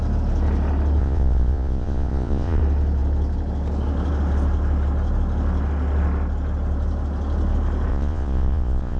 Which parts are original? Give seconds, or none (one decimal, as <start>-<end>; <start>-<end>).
0.0-1.0; 2.6-7.9